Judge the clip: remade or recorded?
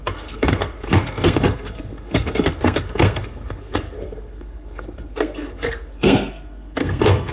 remade